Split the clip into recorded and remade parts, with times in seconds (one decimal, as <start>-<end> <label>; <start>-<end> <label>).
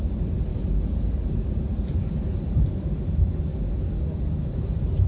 0.0-3.5 remade; 3.5-4.6 recorded; 4.6-5.1 remade